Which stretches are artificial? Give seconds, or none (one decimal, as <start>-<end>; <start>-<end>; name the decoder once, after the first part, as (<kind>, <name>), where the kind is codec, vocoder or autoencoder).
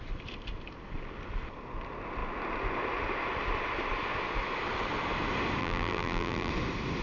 5.6-6.5 (vocoder, BigVGAN v2)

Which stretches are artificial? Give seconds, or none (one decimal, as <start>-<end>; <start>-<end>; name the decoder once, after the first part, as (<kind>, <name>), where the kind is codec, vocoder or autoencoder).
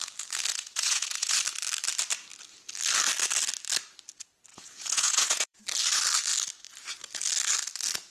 0.5-1.4 (vocoder, Vocos); 4.5-5.6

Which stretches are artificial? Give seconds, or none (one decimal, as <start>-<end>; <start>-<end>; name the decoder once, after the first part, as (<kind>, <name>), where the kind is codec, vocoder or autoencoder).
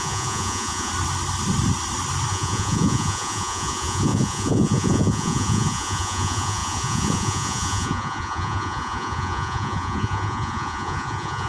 0.0-0.9 (vocoder, Vocos); 2.3-11.5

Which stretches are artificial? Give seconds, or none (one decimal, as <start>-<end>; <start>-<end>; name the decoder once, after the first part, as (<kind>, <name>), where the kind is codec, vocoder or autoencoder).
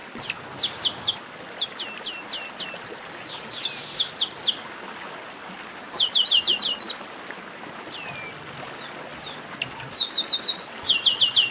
none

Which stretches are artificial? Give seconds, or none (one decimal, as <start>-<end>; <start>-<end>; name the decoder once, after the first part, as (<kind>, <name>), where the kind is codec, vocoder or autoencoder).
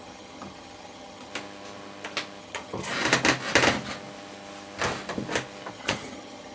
0.0-1.3 (vocoder, HiFi-GAN); 2.4-2.9; 5.7-6.5